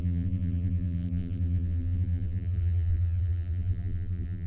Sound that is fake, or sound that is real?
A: fake